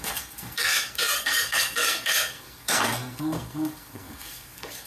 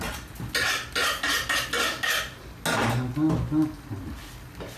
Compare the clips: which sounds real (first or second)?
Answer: second